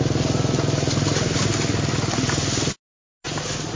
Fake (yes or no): no